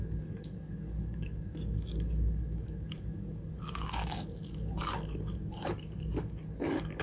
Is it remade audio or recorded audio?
remade